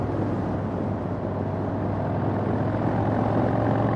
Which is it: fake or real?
real